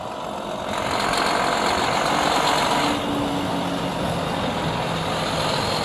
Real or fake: real